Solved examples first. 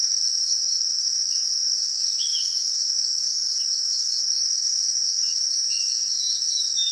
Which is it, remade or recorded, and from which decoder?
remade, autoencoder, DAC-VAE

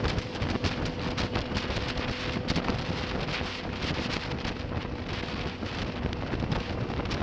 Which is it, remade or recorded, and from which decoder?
recorded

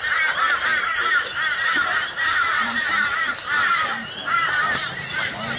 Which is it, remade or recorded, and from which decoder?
remade, vocoder, BigVGAN v2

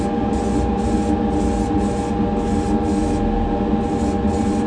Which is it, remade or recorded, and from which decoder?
recorded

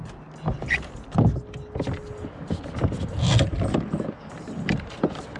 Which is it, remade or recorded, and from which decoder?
recorded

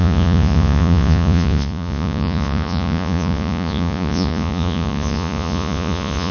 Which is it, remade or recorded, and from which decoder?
remade, vocoder, Vocos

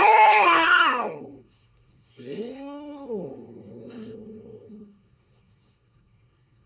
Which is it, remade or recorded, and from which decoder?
remade, codec, SNAC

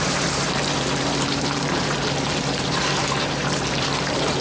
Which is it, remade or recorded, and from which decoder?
remade, vocoder, BigVGAN v2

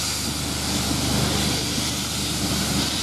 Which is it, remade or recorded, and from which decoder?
recorded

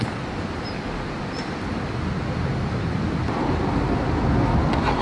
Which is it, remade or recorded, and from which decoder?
recorded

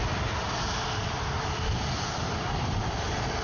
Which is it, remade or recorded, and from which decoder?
remade, vocoder, BigVGAN v2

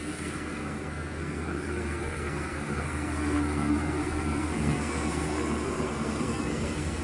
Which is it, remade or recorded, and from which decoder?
remade, codec, SNAC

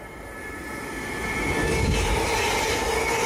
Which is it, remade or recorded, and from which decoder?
recorded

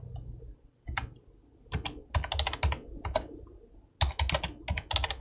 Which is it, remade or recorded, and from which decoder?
recorded